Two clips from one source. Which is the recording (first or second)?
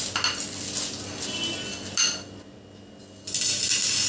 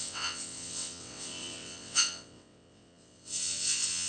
first